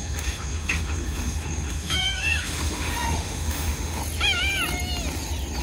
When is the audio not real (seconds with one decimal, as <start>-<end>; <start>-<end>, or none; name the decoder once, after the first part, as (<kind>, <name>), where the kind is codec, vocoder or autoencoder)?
0.0-4.0 (autoencoder, DAC-VAE)